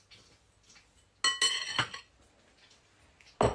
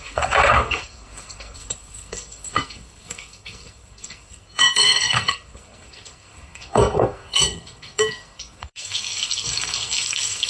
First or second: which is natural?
first